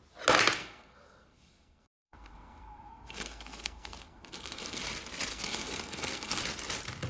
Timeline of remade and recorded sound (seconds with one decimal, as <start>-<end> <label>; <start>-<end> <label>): 0.0-0.6 recorded; 0.6-4.8 remade; 4.8-5.3 recorded; 5.3-6.4 remade; 6.4-7.1 recorded